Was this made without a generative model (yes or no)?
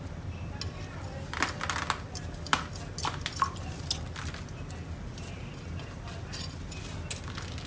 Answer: yes